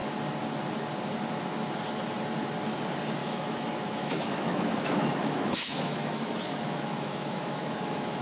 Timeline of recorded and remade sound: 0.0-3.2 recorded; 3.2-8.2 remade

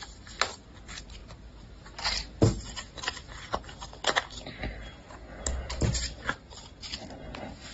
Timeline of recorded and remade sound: 0.0-7.7 recorded

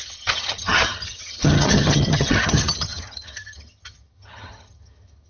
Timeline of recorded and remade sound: 0.0-5.3 remade